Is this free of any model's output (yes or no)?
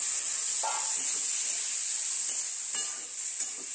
yes